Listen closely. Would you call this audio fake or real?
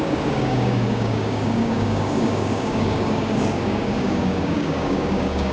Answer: fake